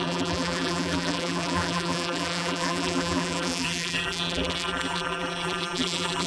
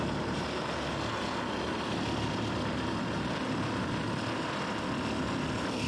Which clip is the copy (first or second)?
first